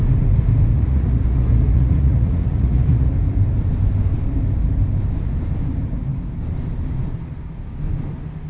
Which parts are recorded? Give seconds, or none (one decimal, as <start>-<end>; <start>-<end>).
0.0-0.7; 3.1-8.5

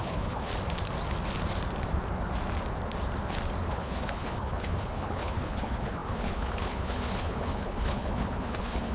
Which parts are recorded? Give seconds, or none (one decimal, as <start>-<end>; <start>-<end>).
0.5-3.6

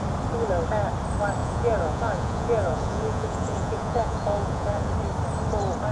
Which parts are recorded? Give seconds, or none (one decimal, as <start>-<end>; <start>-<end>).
0.0-1.4; 4.9-5.9

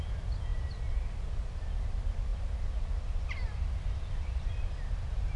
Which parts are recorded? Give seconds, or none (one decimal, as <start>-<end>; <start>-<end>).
0.0-5.4

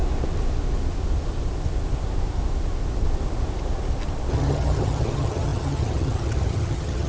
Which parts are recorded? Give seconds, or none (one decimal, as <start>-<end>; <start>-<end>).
0.0-4.3

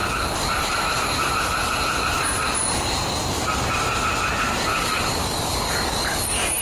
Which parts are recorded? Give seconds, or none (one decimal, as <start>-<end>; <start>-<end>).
0.0-4.7

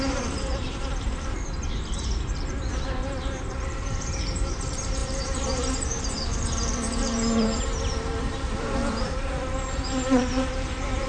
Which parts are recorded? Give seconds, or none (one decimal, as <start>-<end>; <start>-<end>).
none

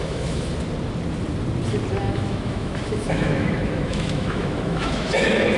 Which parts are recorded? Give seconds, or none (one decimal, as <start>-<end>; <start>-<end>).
0.5-2.0